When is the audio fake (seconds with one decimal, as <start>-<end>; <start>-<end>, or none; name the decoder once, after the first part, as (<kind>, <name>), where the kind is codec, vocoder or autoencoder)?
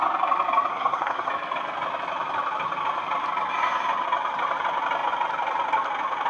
0.7-1.3 (codec, SNAC)